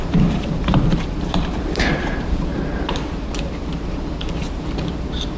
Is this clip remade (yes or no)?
yes